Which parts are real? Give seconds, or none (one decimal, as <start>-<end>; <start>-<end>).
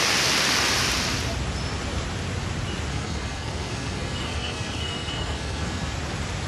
0.0-2.9; 5.9-6.5